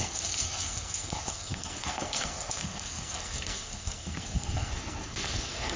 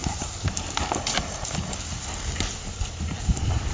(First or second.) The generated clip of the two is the first